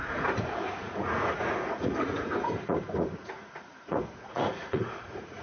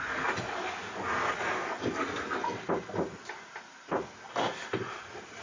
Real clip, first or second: second